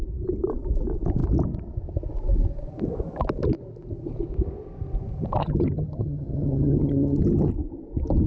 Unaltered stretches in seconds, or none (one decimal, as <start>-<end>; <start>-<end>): 0.0-5.4; 7.5-8.3